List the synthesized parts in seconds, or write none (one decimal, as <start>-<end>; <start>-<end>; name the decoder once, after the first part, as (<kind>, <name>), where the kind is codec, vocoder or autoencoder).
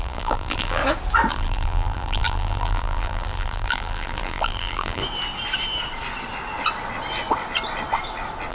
0.0-0.8 (vocoder, BigVGAN v2); 1.3-5.0